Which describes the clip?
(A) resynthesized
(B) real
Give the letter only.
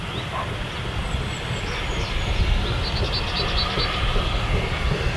B